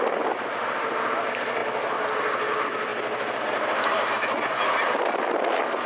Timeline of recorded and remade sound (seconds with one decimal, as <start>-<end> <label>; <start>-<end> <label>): 0.0-5.9 recorded